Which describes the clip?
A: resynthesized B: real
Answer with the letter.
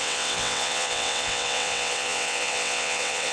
A